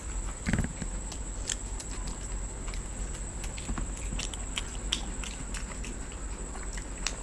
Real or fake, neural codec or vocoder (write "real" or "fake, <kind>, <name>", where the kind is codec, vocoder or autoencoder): real